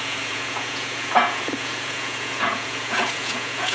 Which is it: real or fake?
fake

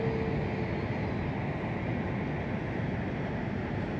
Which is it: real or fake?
real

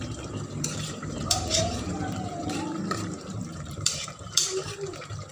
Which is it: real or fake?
fake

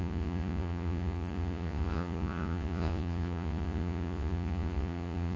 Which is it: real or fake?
fake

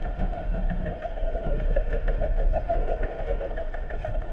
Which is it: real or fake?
fake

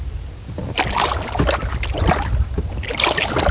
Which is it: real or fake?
real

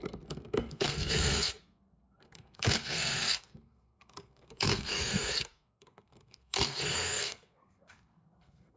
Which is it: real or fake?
fake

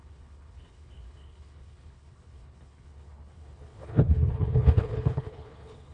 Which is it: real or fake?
fake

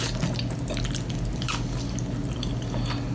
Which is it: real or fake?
real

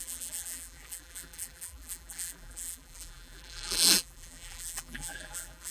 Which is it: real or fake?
fake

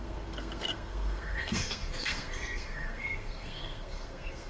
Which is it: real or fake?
fake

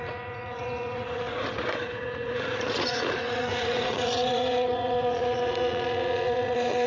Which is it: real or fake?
fake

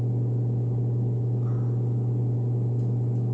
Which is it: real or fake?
real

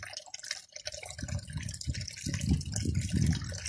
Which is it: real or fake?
real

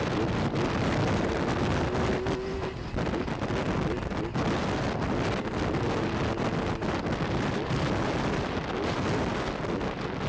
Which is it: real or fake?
real